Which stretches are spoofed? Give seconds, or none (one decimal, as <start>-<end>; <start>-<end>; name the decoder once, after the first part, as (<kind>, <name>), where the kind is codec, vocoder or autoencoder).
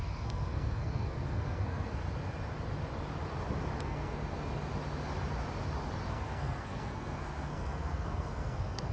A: 0.0-2.0 (codec, SNAC); 3.8-4.2; 6.1-8.9